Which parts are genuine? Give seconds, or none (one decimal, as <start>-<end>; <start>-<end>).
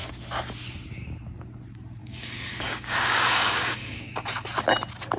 0.0-2.0; 4.1-5.2